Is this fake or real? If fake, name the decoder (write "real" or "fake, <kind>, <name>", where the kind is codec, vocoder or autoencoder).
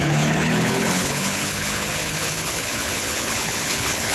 fake, codec, HILCodec